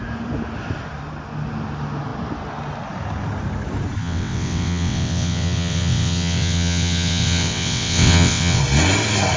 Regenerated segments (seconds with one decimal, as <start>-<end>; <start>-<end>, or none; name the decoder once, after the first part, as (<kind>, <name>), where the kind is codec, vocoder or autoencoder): 4.0-8.6 (vocoder, WaveNeXt)